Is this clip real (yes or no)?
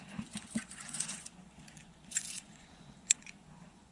no